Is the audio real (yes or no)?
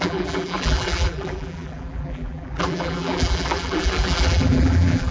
no